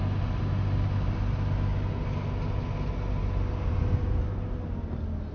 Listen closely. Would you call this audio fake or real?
real